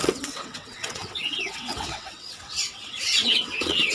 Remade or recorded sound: remade